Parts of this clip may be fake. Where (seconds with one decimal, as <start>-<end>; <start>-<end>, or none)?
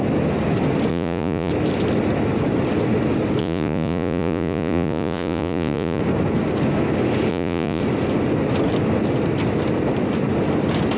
0.9-1.5; 3.4-6.0; 7.3-7.8